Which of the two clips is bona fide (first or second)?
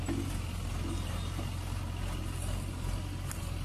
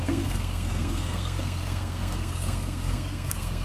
first